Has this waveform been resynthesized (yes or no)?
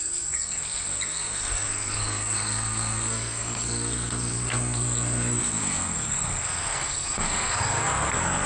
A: yes